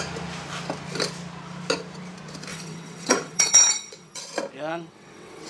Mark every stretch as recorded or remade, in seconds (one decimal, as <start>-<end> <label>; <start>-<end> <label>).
0.0-2.5 recorded; 2.5-4.2 remade; 4.2-4.7 recorded; 4.7-5.5 remade